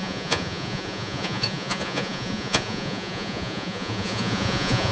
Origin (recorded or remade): remade